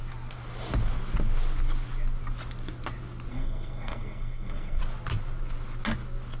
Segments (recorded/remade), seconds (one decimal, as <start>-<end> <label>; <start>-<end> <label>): 0.0-3.3 recorded; 3.3-4.8 remade; 4.8-6.4 recorded